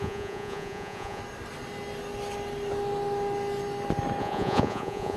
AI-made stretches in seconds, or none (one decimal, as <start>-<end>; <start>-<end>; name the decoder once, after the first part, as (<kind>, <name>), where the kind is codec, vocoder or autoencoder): 0.0-1.2 (vocoder, Vocos); 4.2-5.2